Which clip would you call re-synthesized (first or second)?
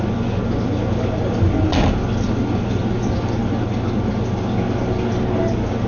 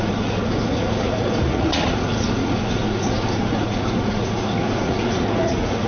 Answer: second